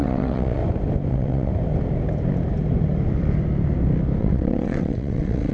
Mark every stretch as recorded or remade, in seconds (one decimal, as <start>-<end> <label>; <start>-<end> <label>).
0.0-0.6 remade; 0.6-1.1 recorded; 1.1-1.5 remade; 1.5-4.2 recorded; 4.2-5.5 remade